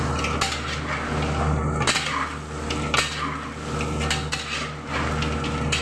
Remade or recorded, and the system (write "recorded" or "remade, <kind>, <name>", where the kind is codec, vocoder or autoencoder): recorded